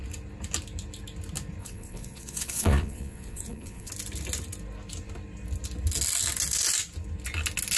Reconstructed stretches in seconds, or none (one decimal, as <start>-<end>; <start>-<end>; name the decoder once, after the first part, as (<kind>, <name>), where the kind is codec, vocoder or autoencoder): 1.6-3.9 (vocoder, Vocos)